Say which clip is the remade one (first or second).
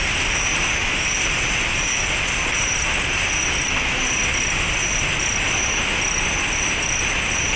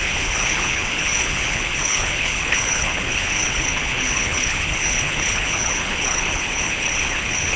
second